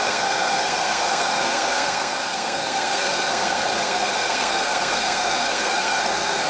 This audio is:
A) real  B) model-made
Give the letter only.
B